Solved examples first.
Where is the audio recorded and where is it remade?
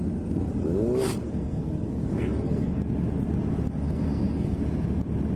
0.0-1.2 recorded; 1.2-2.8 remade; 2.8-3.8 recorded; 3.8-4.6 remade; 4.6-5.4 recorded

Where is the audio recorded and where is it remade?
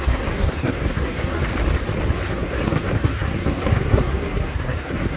0.0-1.4 remade; 1.4-2.1 recorded; 2.1-5.2 remade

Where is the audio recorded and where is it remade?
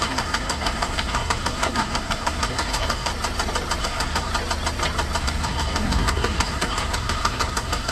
0.0-3.1 remade; 3.1-3.8 recorded; 3.8-4.3 remade; 4.3-5.2 recorded; 5.2-7.9 remade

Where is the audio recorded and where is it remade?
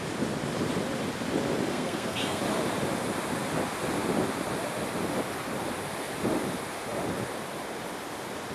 0.0-1.7 recorded; 1.7-2.4 remade; 2.4-8.5 recorded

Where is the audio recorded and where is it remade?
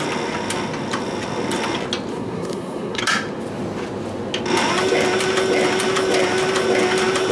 0.0-2.1 recorded; 2.1-3.0 remade; 3.0-7.3 recorded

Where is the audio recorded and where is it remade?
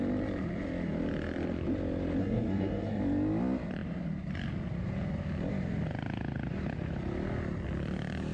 0.0-2.2 recorded; 2.2-3.0 remade; 3.0-8.3 recorded